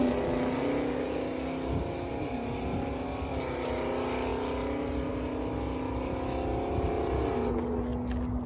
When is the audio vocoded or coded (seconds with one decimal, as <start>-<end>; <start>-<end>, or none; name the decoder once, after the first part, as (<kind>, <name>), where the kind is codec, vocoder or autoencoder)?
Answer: none